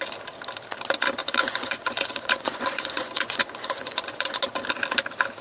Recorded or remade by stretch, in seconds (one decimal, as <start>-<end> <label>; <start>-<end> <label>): 0.0-1.2 recorded; 1.2-4.4 remade; 4.4-5.4 recorded